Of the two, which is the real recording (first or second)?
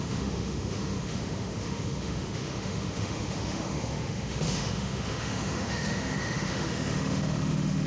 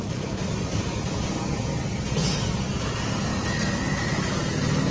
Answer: second